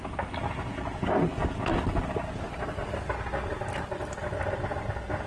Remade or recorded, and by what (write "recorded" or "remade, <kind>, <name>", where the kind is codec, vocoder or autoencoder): recorded